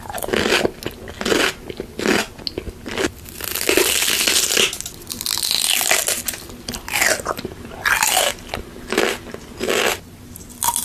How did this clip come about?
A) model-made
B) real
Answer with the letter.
B